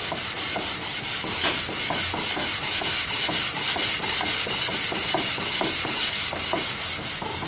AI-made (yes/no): no